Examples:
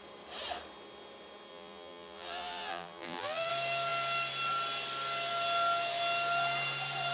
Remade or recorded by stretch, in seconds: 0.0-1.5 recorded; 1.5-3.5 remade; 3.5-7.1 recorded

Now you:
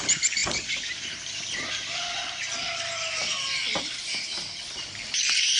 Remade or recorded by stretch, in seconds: 0.0-5.6 recorded

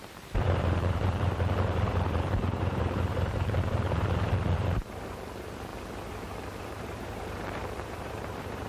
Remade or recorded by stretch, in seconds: 0.0-5.7 remade; 5.7-6.6 recorded; 6.6-8.7 remade

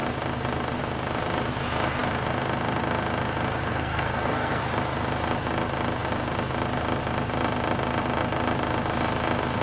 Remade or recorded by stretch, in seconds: 0.0-3.7 recorded; 3.7-4.6 remade; 4.6-9.6 recorded